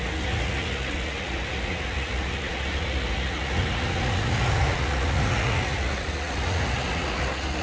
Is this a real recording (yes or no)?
no